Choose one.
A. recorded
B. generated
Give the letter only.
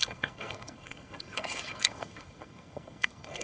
B